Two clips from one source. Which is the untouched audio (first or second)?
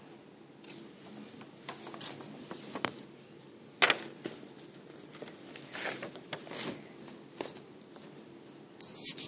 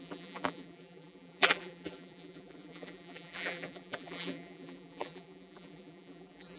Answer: first